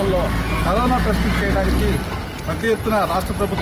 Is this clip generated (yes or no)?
no